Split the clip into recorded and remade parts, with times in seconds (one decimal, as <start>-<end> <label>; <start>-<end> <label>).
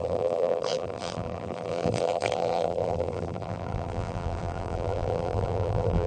0.0-6.1 remade